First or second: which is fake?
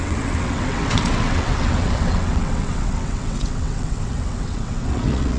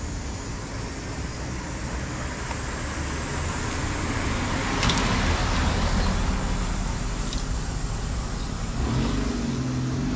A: first